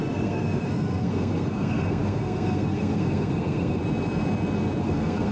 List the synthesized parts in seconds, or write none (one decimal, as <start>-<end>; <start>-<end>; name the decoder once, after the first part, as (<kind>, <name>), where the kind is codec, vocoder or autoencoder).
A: 0.0-3.8 (codec, SNAC); 4.8-5.3